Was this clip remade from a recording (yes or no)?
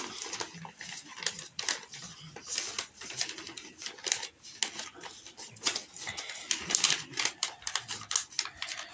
no